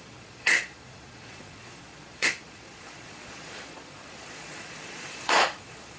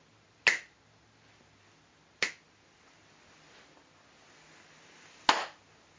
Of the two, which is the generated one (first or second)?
first